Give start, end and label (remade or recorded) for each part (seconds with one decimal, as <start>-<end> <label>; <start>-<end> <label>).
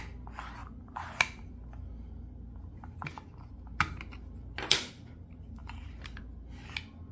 0.0-5.6 recorded; 5.6-6.2 remade; 6.2-7.1 recorded